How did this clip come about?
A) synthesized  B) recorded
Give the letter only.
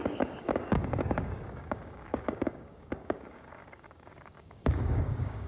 A